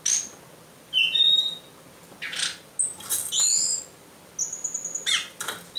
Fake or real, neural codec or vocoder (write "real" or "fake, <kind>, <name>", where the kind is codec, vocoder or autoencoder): real